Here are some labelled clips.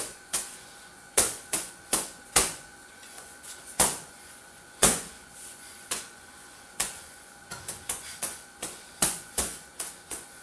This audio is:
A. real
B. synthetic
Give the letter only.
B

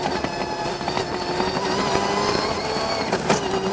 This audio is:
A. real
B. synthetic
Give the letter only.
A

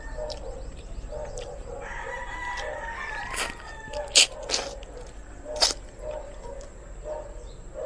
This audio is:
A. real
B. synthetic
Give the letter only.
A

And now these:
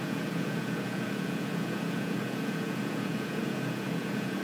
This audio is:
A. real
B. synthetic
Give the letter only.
B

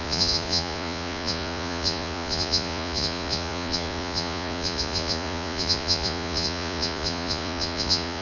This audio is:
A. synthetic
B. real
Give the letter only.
A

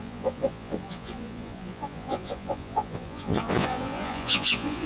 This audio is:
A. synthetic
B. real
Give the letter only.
A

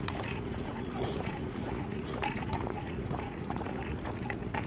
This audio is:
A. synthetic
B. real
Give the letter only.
A